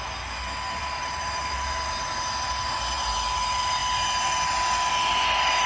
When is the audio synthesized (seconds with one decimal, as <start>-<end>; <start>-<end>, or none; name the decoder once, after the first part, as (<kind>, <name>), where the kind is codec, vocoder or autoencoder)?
0.8-1.9 (vocoder, BigVGAN v2)

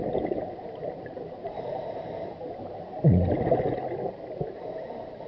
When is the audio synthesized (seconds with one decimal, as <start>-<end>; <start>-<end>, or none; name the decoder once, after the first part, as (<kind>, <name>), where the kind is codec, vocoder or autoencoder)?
0.8-2.8 (vocoder, BigVGAN v2)

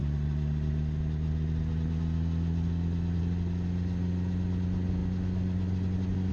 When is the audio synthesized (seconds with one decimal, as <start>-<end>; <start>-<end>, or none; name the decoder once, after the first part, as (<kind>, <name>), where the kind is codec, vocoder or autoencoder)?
none

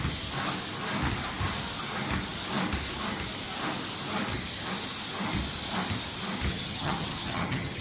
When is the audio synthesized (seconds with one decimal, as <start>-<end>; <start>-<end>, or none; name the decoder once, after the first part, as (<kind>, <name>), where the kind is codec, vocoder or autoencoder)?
6.5-7.8 (vocoder, HiFi-GAN)